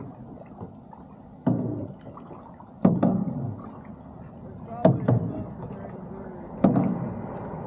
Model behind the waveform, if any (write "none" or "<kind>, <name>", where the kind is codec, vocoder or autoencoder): none